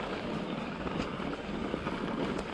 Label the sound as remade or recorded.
recorded